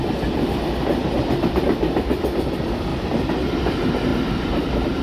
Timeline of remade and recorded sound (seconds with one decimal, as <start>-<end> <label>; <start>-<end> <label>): 0.0-2.9 remade; 2.9-3.5 recorded; 3.5-5.0 remade